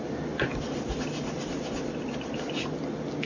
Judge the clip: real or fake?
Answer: real